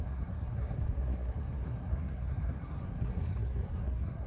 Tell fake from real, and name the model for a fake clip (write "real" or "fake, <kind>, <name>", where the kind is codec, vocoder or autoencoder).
fake, codec, SNAC